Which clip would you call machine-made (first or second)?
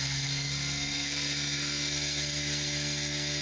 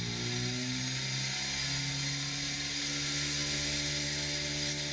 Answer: first